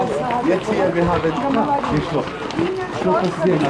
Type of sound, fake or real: real